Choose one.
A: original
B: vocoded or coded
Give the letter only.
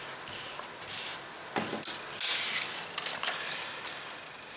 A